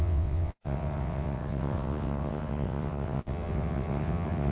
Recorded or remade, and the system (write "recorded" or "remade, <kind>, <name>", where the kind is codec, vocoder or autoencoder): remade, vocoder, WaveNeXt